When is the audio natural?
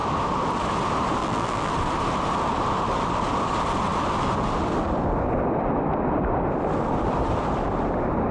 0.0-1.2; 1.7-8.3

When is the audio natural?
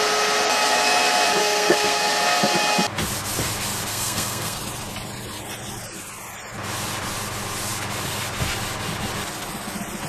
0.0-1.4; 2.0-3.9; 4.6-10.1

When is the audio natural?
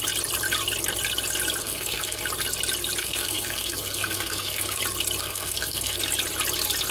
0.0-1.6; 2.2-3.0; 4.8-5.2; 6.0-6.9